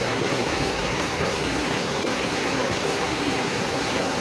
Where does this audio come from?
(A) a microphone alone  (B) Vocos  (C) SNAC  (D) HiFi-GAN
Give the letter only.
C